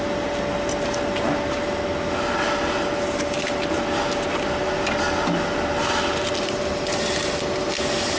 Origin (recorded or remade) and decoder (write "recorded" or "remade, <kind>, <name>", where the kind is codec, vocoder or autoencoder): recorded